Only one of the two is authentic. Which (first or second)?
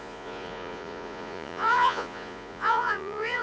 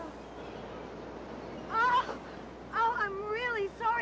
second